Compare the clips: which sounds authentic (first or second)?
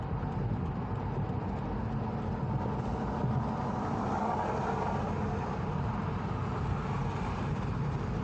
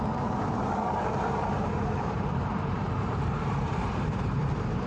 first